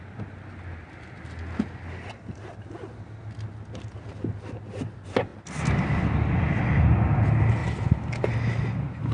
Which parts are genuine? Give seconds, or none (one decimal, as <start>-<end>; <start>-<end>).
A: 0.0-9.1

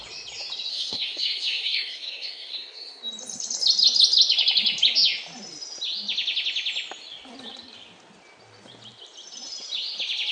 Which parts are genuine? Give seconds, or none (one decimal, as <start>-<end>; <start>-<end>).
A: 0.0-0.7; 3.0-10.3

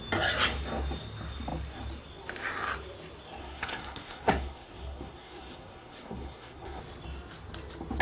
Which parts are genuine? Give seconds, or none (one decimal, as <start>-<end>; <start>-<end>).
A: 0.0-3.4; 6.8-8.0

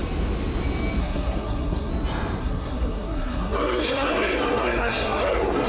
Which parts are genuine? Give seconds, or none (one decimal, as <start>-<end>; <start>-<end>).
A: 0.0-1.0; 1.9-2.4